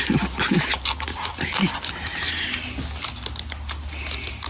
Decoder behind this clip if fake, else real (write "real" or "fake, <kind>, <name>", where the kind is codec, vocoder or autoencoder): real